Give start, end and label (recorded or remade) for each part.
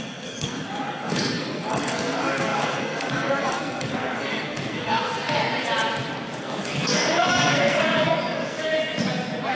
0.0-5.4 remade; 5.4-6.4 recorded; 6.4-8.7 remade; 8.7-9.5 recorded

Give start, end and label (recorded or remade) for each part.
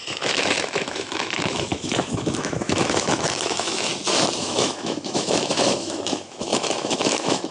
0.0-3.9 remade; 3.9-4.4 recorded; 4.4-7.5 remade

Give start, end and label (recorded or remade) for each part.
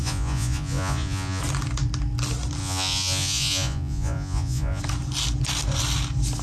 0.0-1.4 remade; 1.4-2.6 recorded; 2.6-4.8 remade; 4.8-6.4 recorded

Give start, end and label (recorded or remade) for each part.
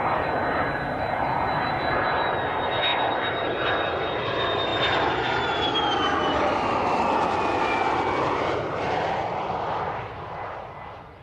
0.0-11.2 recorded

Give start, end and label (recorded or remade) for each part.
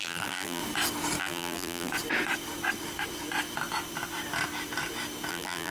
0.0-0.6 remade; 0.6-1.2 recorded; 1.2-1.9 remade; 1.9-5.3 recorded; 5.3-5.7 remade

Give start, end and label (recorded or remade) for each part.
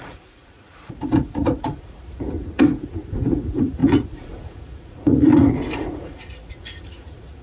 0.0-7.4 remade